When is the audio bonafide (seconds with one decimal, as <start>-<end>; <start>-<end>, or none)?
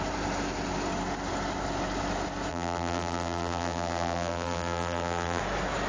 0.0-2.5; 5.4-5.9